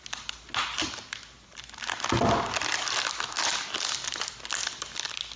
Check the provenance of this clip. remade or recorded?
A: recorded